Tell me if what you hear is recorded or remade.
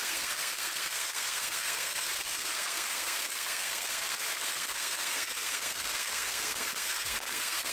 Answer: remade